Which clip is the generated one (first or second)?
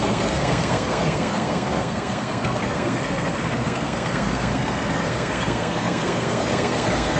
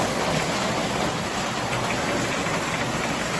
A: first